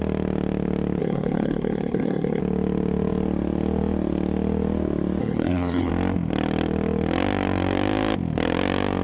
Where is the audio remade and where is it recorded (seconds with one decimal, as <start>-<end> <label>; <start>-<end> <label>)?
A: 0.0-1.0 recorded; 1.0-2.4 remade; 2.4-5.2 recorded; 5.2-5.9 remade; 5.9-9.0 recorded